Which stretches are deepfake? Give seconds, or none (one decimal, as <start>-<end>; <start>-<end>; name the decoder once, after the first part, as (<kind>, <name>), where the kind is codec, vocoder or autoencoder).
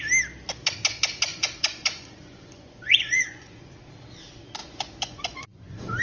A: 1.3-3.8 (vocoder, Vocos); 4.6-6.0